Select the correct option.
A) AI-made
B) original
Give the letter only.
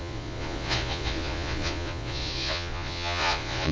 A